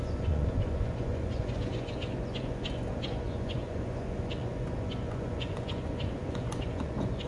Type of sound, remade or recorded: remade